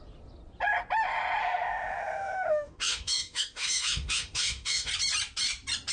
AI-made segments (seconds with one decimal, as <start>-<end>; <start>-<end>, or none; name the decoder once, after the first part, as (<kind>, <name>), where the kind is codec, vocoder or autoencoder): 1.4-4.9 (autoencoder, DAC-VAE)